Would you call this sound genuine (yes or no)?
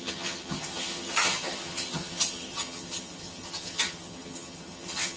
no